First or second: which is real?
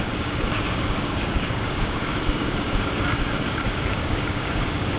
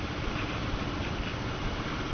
second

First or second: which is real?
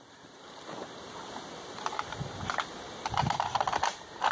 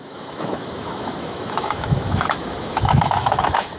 first